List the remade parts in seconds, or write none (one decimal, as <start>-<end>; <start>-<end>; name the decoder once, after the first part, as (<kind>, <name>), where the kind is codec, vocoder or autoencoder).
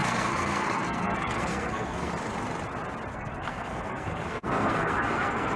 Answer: 0.0-2.1 (codec, SNAC); 3.1-5.6